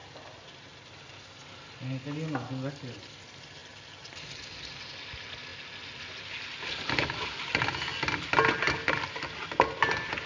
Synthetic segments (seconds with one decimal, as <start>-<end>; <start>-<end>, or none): none